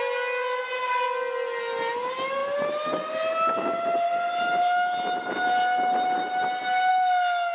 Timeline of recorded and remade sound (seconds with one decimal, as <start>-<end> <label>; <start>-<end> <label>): 0.0-7.5 recorded